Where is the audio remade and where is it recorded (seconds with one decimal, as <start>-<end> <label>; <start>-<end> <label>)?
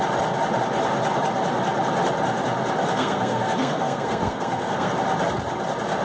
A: 0.0-2.9 recorded; 2.9-4.9 remade; 4.9-6.0 recorded